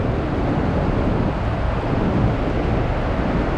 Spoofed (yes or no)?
no